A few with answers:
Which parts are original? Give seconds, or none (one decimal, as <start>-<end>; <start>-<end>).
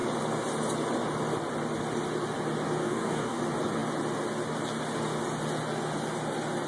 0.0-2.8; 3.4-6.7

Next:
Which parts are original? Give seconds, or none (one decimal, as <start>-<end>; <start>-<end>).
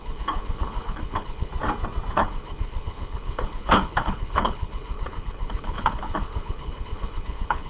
1.5-2.1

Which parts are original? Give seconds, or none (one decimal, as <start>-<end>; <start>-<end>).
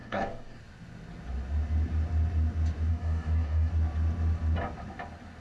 0.6-2.9; 3.7-5.4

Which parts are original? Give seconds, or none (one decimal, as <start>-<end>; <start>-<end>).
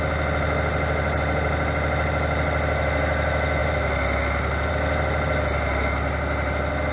0.0-6.9